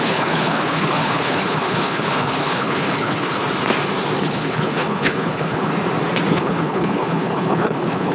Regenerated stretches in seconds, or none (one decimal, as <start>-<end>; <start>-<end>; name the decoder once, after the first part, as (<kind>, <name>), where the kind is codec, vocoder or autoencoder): 0.0-3.4 (codec, HILCodec); 4.2-5.7; 6.3-8.1